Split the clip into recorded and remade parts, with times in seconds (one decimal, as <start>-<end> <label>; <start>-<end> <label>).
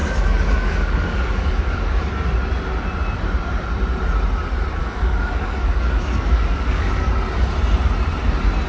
0.0-2.1 remade; 2.1-4.8 recorded; 4.8-7.1 remade; 7.1-8.7 recorded